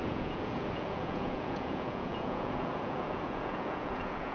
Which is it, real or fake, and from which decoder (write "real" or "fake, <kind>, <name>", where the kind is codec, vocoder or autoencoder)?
fake, vocoder, Vocos